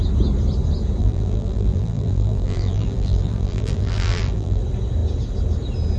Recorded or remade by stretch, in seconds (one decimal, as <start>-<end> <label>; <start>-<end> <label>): 0.0-1.0 recorded; 1.0-4.6 remade; 4.6-6.0 recorded